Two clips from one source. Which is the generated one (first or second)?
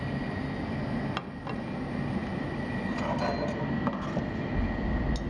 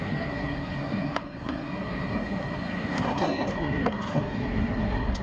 second